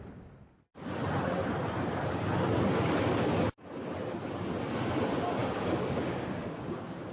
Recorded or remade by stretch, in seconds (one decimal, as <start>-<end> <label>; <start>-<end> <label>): 0.0-5.4 recorded; 5.4-7.1 remade